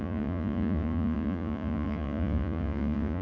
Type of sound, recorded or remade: remade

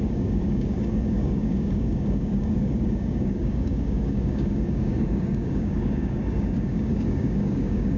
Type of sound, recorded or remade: remade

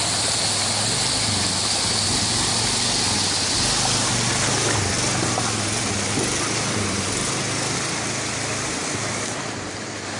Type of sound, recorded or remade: recorded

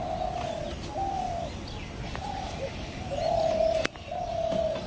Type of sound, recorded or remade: recorded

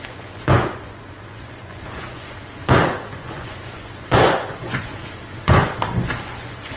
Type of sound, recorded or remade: remade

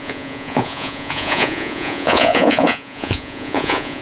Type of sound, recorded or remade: remade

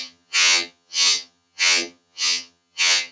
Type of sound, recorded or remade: remade